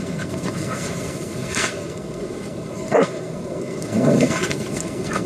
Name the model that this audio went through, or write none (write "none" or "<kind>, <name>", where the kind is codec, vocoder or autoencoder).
codec, SNAC